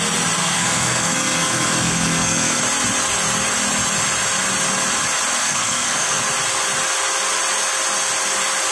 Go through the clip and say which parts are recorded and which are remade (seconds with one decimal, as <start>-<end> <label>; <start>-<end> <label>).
0.0-0.4 recorded; 0.4-2.6 remade; 2.6-5.4 recorded; 5.4-6.2 remade; 6.2-8.7 recorded